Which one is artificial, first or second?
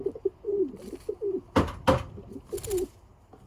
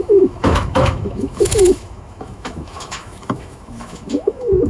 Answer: second